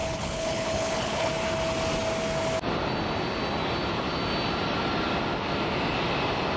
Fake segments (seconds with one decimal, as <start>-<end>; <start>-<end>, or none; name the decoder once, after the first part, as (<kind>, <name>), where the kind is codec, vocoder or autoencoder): 0.0-1.3 (codec, HILCodec)